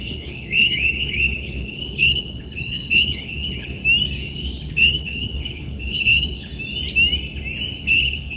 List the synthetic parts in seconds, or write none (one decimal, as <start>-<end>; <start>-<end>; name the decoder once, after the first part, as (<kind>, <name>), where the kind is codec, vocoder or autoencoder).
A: 0.0-3.8 (codec, HILCodec); 4.7-6.5; 7.8-8.4

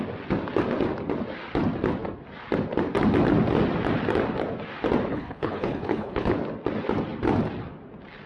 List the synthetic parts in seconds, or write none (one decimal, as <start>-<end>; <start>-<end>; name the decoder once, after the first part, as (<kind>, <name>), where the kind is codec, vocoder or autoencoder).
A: 5.1-6.3 (codec, HILCodec)

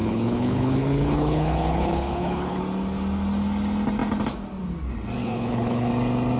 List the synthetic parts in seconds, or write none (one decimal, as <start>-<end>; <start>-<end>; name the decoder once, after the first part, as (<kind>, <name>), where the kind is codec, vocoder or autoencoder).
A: 0.0-2.6 (codec, HILCodec); 5.2-5.9

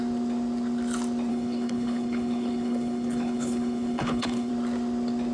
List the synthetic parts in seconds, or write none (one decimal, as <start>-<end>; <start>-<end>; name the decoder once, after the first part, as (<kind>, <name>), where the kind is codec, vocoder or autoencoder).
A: 1.3-4.5 (codec, HILCodec)

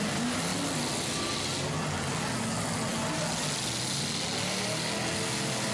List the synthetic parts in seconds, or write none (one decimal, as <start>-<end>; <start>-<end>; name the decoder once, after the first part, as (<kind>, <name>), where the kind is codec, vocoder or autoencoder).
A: none

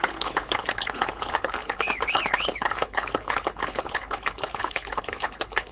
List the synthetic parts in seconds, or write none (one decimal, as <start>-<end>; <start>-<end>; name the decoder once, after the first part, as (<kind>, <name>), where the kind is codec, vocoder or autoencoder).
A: 0.0-5.7 (codec, HILCodec)

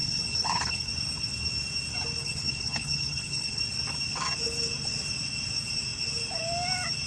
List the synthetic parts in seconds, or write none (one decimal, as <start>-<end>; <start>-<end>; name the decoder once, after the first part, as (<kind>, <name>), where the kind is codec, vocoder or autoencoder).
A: 0.0-0.9 (codec, HILCodec); 2.2-3.6